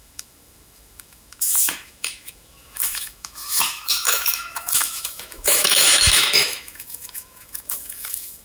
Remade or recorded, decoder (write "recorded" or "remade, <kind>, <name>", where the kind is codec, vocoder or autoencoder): remade, autoencoder, DAC-VAE